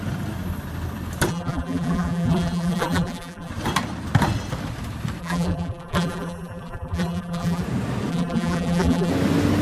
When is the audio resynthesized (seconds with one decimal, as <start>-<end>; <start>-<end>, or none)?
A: 1.3-3.5; 5.2-7.6; 8.1-9.1